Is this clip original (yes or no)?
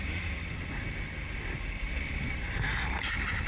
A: yes